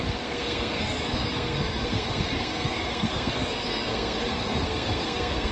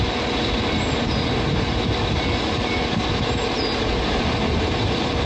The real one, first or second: second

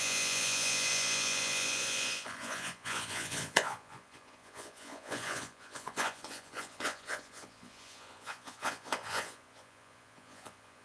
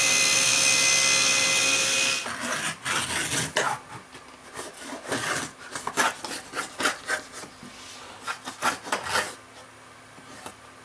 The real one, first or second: second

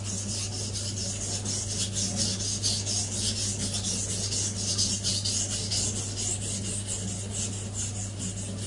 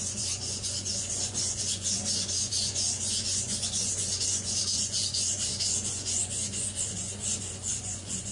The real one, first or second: first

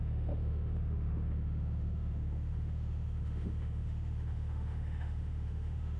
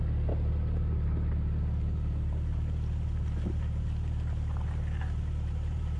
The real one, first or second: second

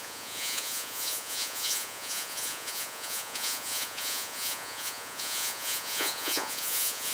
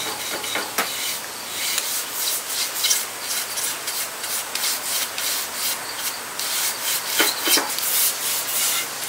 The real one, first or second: second